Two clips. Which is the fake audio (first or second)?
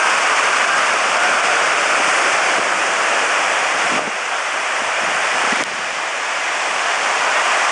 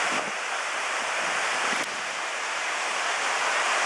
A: first